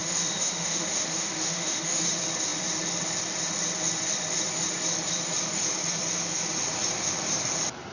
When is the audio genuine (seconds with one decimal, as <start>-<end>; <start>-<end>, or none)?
2.0-7.9